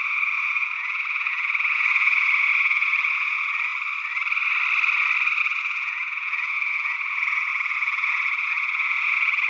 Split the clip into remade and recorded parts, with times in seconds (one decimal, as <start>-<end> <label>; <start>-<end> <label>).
0.0-3.7 remade; 3.7-5.4 recorded; 5.4-9.5 remade